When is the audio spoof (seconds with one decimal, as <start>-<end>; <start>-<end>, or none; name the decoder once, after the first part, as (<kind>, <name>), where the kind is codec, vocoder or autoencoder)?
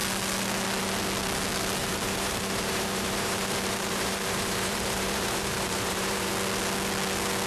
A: 1.8-6.3 (vocoder, BigVGAN v2)